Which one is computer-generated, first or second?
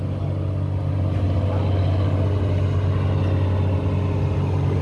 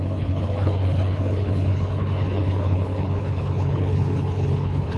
second